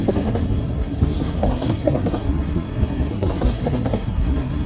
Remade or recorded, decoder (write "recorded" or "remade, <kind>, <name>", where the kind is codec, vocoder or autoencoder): remade, codec, SNAC